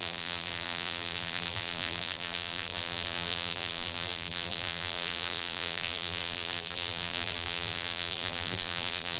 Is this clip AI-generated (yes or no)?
yes